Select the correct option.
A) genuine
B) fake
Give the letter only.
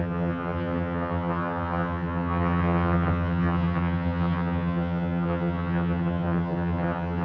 B